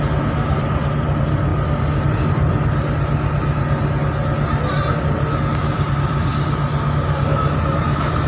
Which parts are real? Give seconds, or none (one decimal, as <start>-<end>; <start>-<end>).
1.5-5.0; 6.3-7.2